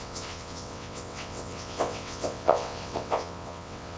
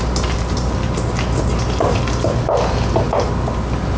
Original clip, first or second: second